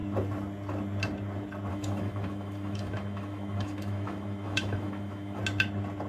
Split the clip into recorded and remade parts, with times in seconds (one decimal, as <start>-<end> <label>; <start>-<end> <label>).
0.0-1.7 recorded; 1.7-5.4 remade; 5.4-6.1 recorded